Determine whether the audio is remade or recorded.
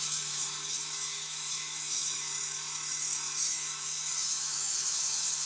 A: remade